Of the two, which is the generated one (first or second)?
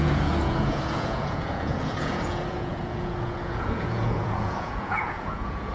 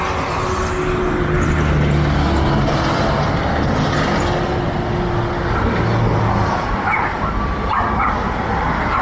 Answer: first